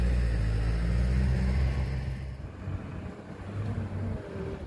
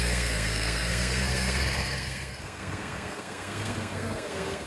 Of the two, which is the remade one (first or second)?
second